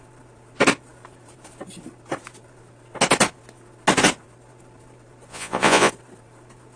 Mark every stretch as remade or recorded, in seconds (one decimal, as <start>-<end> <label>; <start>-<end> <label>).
0.0-5.3 recorded; 5.3-5.9 remade; 5.9-6.8 recorded